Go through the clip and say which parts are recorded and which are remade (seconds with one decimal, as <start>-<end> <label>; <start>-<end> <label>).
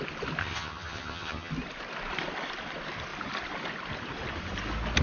0.0-0.4 recorded; 0.4-1.5 remade; 1.5-5.0 recorded